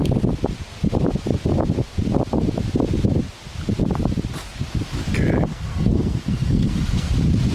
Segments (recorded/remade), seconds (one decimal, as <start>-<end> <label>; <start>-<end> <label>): 0.0-5.5 recorded; 5.5-7.1 remade; 7.1-7.5 recorded